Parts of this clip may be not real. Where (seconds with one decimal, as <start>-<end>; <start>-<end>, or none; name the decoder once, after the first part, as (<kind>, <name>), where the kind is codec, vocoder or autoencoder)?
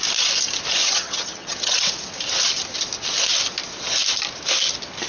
0.8-1.8 (vocoder, HiFi-GAN)